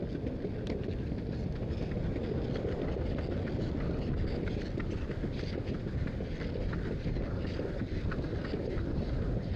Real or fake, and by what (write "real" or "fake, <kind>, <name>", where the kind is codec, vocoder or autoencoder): real